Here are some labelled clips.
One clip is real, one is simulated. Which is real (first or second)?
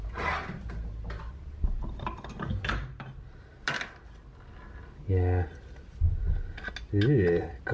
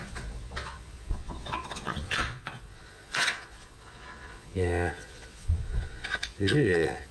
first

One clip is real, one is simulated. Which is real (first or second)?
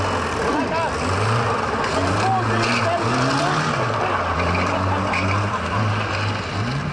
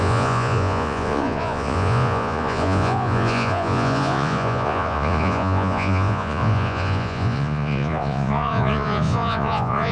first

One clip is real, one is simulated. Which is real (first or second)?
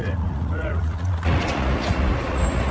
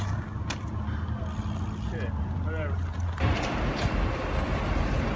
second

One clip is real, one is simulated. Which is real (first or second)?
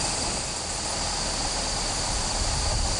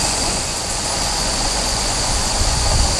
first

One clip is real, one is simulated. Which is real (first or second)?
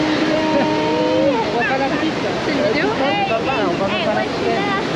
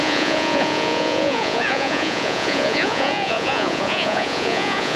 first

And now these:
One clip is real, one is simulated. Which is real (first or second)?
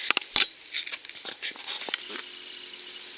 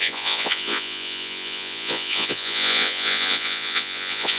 first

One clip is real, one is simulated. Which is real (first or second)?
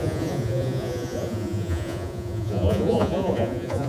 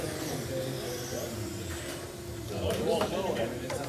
second